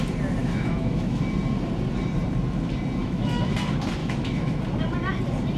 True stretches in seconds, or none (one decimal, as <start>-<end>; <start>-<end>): 0.0-0.4; 1.2-3.0; 3.5-4.0; 4.6-5.6